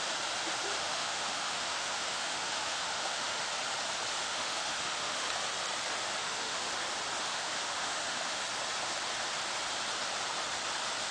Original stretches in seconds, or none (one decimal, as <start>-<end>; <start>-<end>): 0.0-0.8; 3.4-4.2; 5.3-6.2; 6.7-7.2; 8.4-11.1